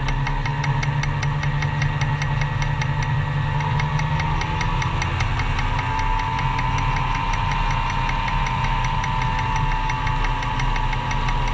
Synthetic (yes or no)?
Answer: no